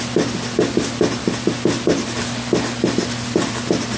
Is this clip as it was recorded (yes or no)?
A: yes